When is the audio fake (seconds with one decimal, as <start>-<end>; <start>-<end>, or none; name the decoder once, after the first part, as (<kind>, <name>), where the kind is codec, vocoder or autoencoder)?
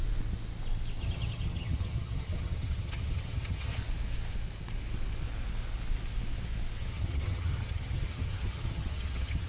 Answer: 1.0-3.8 (vocoder, HiFi-GAN); 6.8-9.5